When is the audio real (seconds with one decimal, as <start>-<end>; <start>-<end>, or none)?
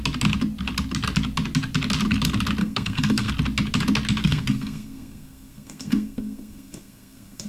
0.0-2.6; 3.3-4.2